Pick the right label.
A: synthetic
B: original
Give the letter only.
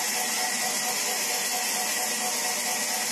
B